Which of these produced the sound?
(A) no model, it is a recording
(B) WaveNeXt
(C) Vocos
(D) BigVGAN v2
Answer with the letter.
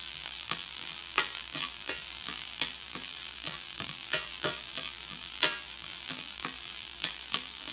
D